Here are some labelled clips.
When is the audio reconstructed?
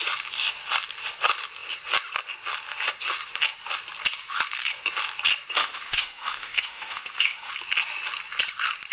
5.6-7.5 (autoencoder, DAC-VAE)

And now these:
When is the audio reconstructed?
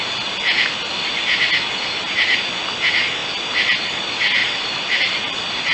4.4-5.0 (vocoder, BigVGAN v2)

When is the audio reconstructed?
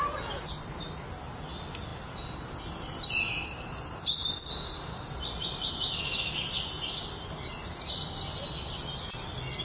none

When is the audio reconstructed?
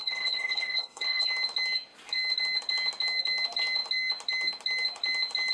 0.0-1.3 (codec, HILCodec)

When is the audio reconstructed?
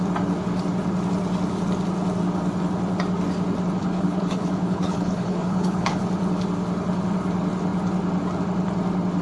3.8-6.0 (codec, HILCodec)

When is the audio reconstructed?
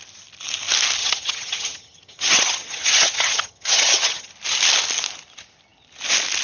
1.0-4.3 (vocoder, HiFi-GAN)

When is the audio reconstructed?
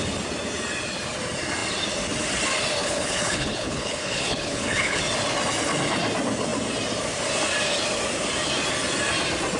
2.8-5.0 (codec, HILCodec)